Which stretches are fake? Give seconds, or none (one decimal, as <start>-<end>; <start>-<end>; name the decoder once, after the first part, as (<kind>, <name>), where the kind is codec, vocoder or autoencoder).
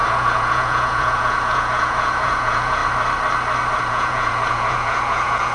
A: 0.0-2.8 (vocoder, Vocos); 3.8-5.5